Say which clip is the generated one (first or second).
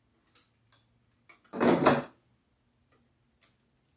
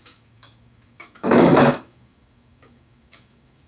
second